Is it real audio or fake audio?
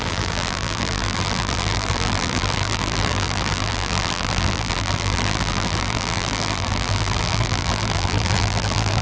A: fake